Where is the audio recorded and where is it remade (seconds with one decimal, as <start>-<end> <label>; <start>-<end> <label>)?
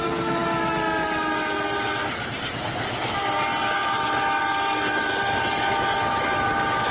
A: 0.0-6.9 recorded